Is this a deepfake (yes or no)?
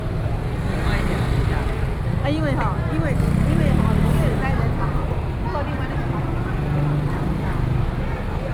no